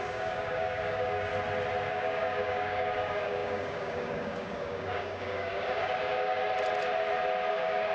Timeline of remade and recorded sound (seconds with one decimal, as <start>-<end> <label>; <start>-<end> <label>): 0.0-1.3 remade; 1.3-1.9 recorded; 1.9-6.4 remade; 6.4-7.5 recorded; 7.5-7.9 remade